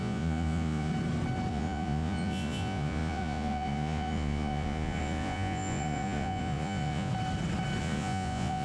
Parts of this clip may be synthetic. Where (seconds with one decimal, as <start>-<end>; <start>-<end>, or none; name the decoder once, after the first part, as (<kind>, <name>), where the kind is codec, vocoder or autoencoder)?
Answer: 0.0-0.9 (vocoder, Vocos); 1.5-7.1; 7.8-8.6